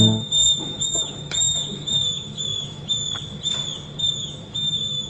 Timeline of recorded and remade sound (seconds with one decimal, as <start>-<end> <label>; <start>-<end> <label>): 0.0-3.0 remade; 3.0-4.0 recorded; 4.0-5.1 remade